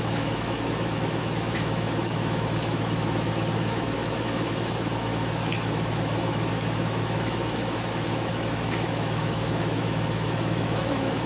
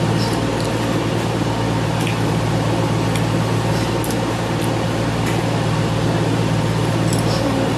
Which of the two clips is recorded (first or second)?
second